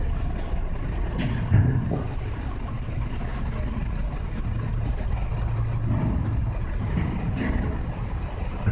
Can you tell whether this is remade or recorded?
recorded